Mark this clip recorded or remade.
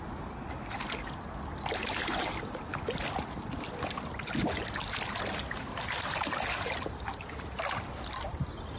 recorded